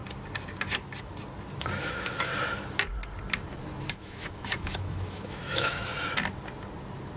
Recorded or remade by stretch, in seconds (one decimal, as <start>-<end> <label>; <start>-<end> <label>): 0.0-1.6 recorded; 1.6-2.3 remade; 2.3-3.9 recorded; 3.9-5.9 remade; 5.9-7.2 recorded